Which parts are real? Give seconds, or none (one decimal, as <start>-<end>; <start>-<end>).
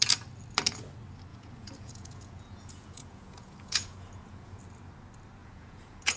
0.0-1.3; 4.6-5.4